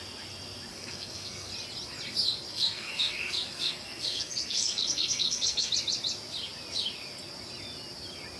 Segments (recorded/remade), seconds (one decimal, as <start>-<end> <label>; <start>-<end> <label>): 0.0-0.7 recorded; 0.7-1.5 remade; 1.5-2.5 recorded; 2.5-5.7 remade; 5.7-8.4 recorded